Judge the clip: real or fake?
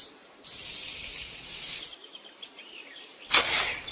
fake